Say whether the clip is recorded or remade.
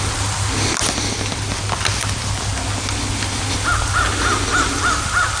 recorded